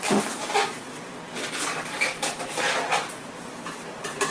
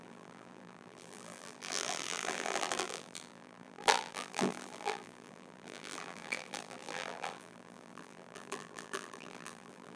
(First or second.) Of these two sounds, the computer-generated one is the second